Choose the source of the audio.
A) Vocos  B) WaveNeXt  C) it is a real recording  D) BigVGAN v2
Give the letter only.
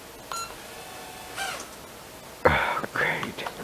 C